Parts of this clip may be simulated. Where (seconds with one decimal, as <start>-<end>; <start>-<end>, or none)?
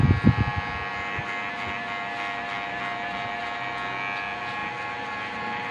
4.6-5.7